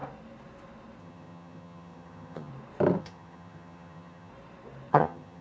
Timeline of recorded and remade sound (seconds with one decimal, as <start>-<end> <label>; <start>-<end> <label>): 0.0-1.0 recorded; 1.0-2.5 remade; 2.5-3.0 recorded; 3.0-4.3 remade; 4.3-4.9 recorded; 4.9-5.4 remade